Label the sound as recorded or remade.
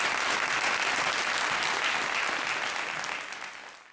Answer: recorded